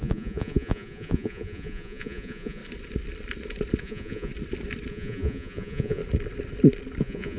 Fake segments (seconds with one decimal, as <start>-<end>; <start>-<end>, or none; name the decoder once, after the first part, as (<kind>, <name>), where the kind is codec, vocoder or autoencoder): 0.0-2.6 (vocoder, Vocos); 3.8-4.3; 4.9-6.0; 7.0-7.4